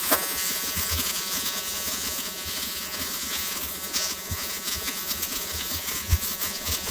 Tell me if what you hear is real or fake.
fake